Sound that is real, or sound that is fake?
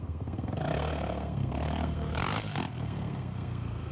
fake